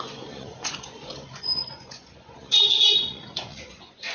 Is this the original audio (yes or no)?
no